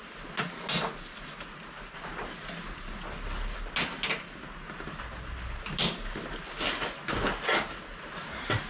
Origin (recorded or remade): recorded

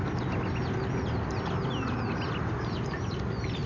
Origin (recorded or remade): recorded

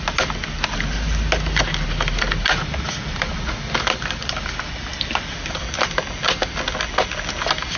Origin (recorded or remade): recorded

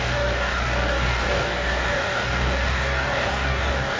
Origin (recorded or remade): remade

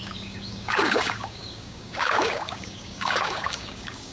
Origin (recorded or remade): remade